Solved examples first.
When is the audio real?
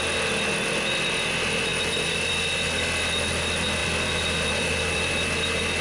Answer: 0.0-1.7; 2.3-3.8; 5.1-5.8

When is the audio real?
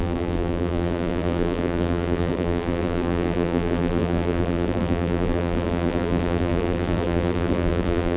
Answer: none